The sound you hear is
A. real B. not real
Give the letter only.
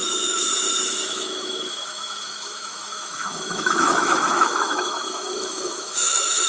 B